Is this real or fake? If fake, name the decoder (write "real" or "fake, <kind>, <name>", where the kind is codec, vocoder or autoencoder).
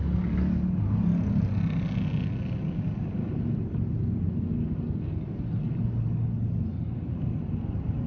real